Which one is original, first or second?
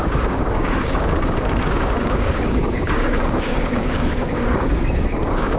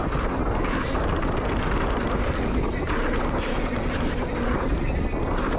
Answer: second